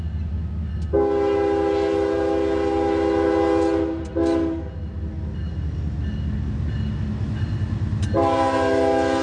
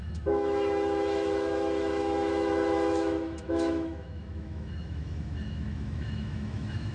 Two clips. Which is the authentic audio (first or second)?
first